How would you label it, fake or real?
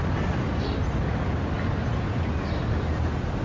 real